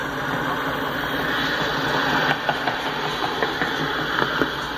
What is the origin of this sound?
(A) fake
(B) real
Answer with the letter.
B